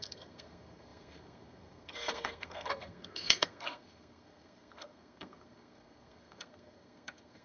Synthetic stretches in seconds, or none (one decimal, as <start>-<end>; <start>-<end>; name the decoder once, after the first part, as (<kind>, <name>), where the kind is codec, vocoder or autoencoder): 0.0-7.4 (codec, SNAC)